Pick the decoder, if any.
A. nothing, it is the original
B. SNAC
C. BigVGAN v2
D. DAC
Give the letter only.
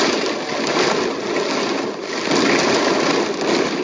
A